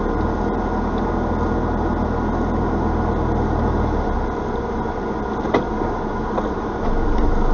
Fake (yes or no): no